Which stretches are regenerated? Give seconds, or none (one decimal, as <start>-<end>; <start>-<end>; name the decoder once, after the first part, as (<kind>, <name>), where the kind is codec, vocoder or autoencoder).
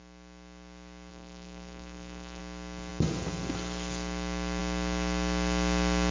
1.1-2.4 (codec, SNAC)